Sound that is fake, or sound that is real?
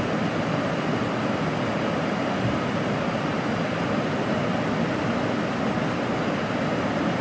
real